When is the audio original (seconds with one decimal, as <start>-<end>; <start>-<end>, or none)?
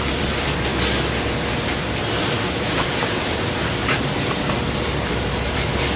0.7-2.2; 3.6-4.7